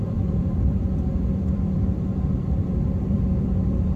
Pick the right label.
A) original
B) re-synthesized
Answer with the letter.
B